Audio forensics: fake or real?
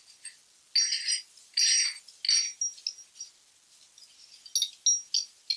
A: real